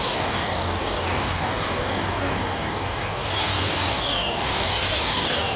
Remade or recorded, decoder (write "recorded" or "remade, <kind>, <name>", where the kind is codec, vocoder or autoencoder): remade, codec, DAC